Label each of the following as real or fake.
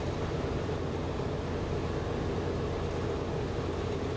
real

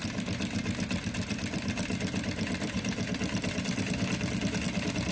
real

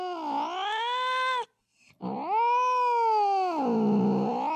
real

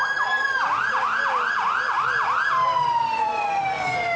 real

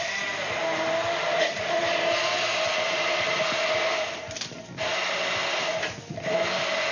real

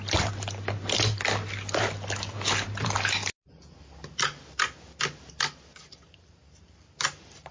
real